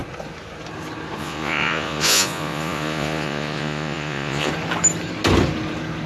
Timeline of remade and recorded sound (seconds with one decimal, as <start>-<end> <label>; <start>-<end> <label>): 0.0-1.2 recorded; 1.2-4.5 remade; 4.5-6.1 recorded